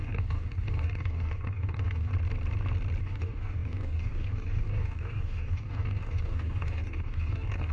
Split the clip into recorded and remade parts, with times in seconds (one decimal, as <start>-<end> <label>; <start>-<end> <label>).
0.0-2.1 remade; 2.1-3.0 recorded; 3.0-7.7 remade